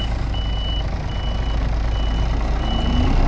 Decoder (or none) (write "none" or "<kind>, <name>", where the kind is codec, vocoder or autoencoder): none